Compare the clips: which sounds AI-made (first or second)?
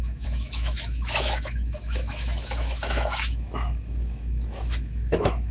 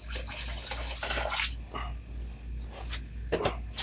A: first